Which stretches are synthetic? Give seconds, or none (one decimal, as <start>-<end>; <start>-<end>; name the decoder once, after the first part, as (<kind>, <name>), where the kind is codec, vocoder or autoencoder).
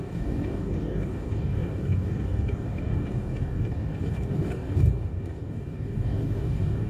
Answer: 0.0-6.9 (codec, DAC)